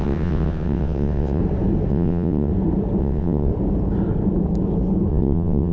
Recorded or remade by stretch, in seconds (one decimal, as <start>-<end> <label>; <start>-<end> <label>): 0.0-1.4 remade; 1.4-1.9 recorded; 1.9-2.5 remade; 2.5-3.0 recorded; 3.0-3.5 remade; 3.5-5.1 recorded; 5.1-5.7 remade